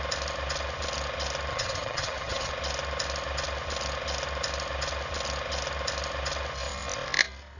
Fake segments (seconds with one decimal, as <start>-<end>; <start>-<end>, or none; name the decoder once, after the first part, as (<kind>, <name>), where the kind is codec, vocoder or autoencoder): 1.5-2.5 (vocoder, HiFi-GAN)